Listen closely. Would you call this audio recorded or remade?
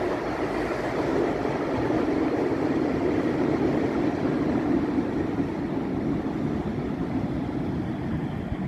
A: recorded